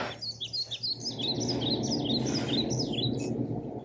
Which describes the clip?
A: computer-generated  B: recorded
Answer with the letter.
B